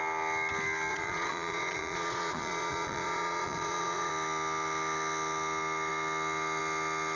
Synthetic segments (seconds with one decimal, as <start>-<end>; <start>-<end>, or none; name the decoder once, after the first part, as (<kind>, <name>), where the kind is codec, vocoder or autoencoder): 0.9-4.1 (vocoder, Vocos)